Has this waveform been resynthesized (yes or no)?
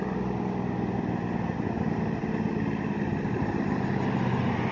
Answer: no